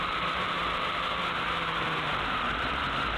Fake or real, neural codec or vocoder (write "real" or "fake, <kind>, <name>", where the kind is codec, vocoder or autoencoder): fake, vocoder, BigVGAN v2